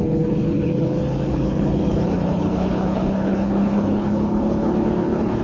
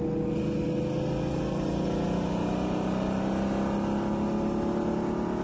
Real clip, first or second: second